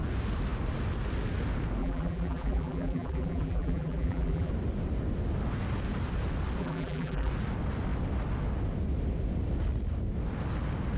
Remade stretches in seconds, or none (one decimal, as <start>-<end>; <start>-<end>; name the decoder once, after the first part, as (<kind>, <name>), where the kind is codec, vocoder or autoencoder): 1.8-4.5 (vocoder, BigVGAN v2); 6.6-7.3